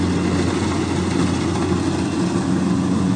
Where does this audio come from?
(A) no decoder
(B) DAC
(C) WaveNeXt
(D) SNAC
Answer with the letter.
A